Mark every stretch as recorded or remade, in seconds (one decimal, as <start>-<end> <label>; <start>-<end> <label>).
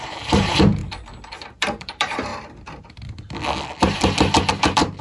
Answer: 0.0-0.8 remade; 0.8-1.6 recorded; 1.6-2.3 remade; 2.3-4.5 recorded; 4.5-5.0 remade